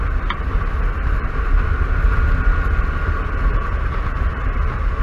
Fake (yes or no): no